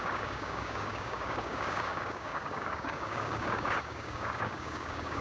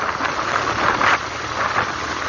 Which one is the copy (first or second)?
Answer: first